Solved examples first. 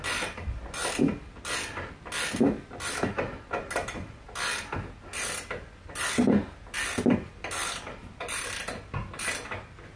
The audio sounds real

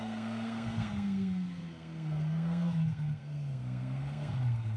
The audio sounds fake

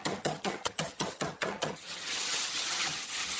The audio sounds fake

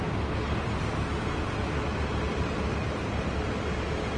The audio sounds real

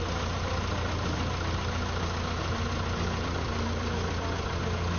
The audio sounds real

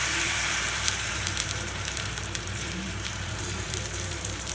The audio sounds fake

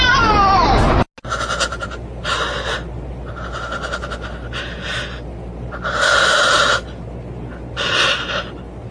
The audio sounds real